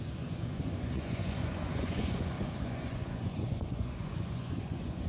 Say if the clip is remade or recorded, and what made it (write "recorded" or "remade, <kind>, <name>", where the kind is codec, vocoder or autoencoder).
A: remade, vocoder, Vocos